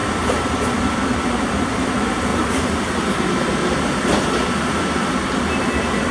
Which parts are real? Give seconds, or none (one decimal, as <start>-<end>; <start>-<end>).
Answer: 0.0-2.3; 3.2-3.6; 5.0-6.1